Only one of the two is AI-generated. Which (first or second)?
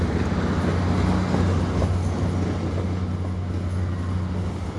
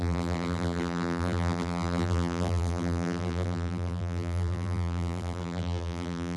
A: second